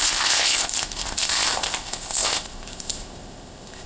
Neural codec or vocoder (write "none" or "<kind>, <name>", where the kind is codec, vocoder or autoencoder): codec, ZipCodec